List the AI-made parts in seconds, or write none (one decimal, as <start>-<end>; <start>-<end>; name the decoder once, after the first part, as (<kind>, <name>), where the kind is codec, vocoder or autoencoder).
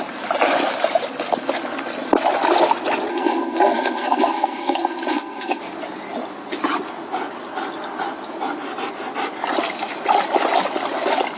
3.1-5.6 (codec, SNAC)